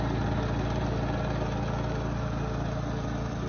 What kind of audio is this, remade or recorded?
recorded